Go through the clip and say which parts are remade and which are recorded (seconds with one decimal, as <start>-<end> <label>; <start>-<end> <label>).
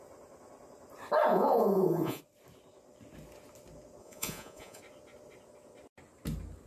0.0-1.3 recorded; 1.3-2.2 remade; 2.2-4.0 recorded; 4.0-4.8 remade; 4.8-6.7 recorded